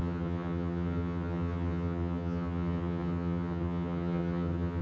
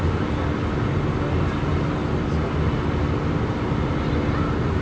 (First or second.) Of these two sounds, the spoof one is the first